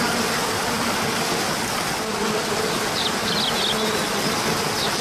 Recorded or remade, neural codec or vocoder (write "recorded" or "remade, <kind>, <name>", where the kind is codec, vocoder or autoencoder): recorded